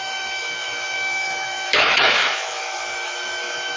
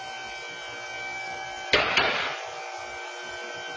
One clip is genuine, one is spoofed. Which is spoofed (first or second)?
first